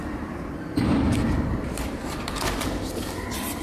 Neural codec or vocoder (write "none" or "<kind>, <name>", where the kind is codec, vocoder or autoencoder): vocoder, BigVGAN v2